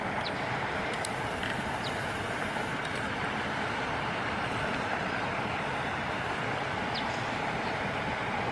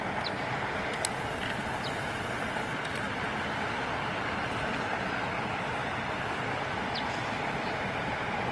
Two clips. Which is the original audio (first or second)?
second